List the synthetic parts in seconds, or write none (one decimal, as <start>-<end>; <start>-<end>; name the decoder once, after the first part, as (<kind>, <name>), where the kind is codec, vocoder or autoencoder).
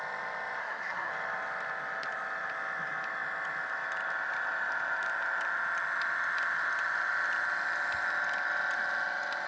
0.6-1.1 (codec, SNAC)